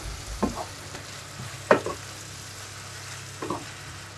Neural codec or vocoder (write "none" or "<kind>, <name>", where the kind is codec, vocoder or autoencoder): none